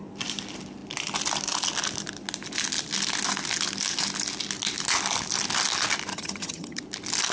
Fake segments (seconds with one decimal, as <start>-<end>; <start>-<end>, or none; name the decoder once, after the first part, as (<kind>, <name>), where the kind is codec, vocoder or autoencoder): 6.1-6.8 (vocoder, HiFi-GAN)